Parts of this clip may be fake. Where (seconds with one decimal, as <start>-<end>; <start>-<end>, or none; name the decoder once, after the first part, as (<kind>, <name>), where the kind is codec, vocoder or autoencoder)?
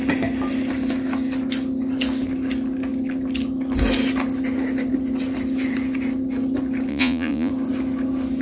6.9-7.5 (vocoder, Vocos)